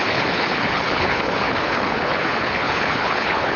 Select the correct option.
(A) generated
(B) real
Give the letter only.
A